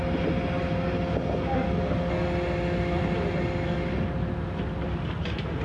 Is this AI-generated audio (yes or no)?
no